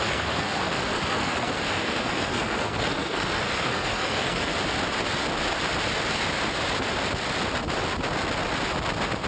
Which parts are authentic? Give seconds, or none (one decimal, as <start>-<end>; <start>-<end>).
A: 4.5-9.3